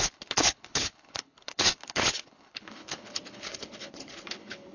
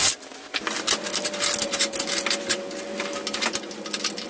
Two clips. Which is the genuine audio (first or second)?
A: second